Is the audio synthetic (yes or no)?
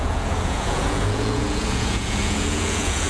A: yes